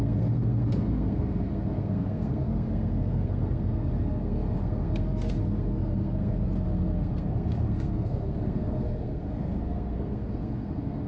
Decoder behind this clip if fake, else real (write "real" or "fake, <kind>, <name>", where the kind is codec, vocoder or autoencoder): fake, codec, SNAC